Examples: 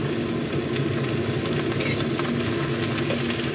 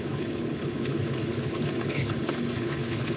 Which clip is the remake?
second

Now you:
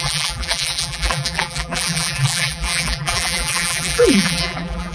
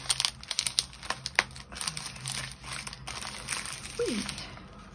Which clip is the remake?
first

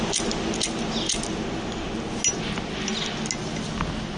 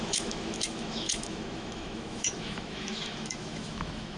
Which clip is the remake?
second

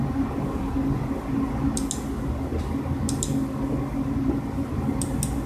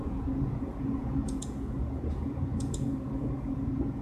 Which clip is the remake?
second